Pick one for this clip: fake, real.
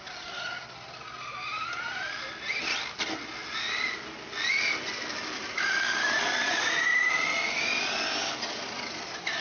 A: real